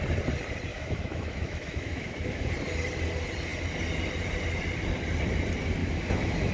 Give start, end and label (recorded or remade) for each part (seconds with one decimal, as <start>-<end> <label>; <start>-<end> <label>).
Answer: 0.0-0.7 recorded; 0.7-2.5 remade; 2.5-5.8 recorded; 5.8-6.5 remade